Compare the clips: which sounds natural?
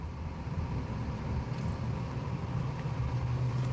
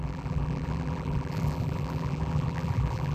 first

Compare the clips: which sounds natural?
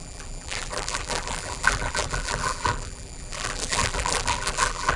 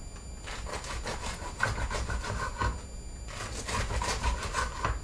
second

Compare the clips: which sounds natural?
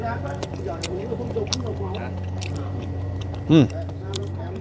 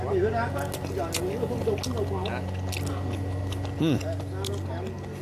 second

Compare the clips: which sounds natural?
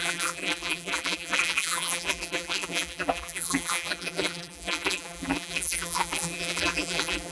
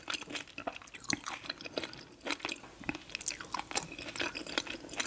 second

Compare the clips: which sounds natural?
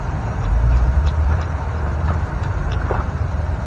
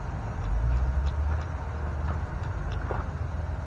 second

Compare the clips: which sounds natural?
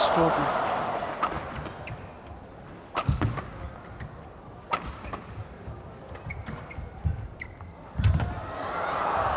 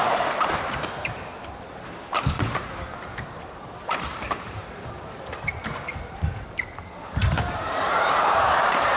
first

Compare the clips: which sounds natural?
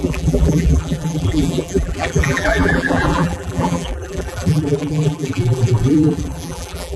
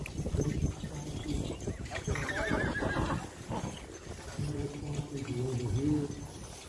second